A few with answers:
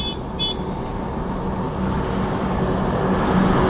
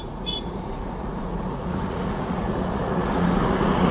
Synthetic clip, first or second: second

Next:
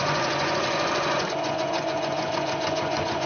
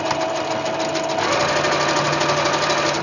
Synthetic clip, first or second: first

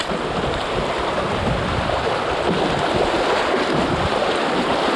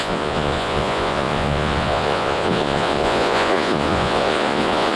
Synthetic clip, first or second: second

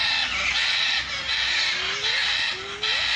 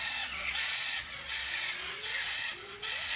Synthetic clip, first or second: second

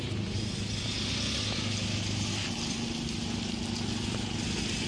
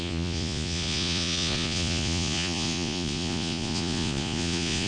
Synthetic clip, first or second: second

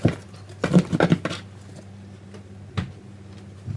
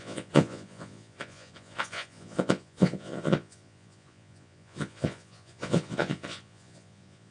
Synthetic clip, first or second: second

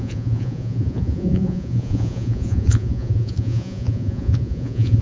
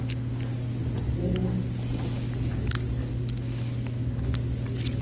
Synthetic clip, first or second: first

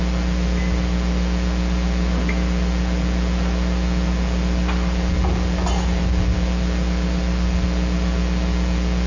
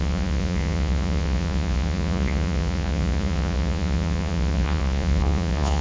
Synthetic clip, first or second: second